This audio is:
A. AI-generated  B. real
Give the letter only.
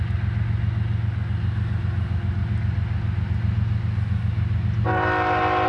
B